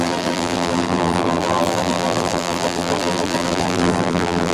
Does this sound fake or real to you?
fake